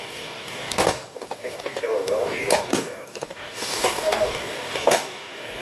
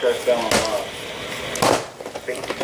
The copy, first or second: first